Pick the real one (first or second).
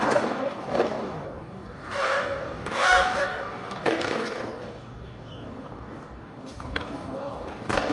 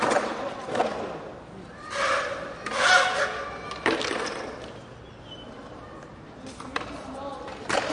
second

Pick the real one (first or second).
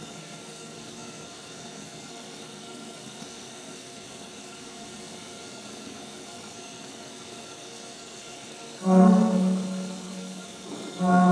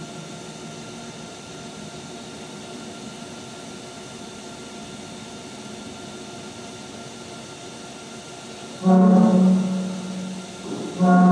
second